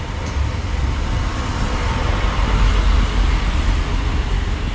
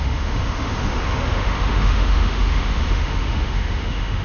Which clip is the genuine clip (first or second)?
first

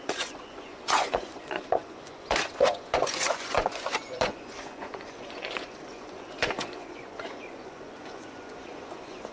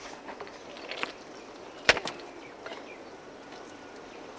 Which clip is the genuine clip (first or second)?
second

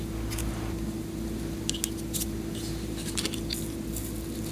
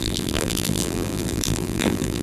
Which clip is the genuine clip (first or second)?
first